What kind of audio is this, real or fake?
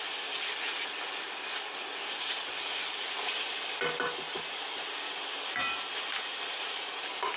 real